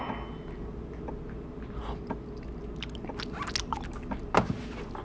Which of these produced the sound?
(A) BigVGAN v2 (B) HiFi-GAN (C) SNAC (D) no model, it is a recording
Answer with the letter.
D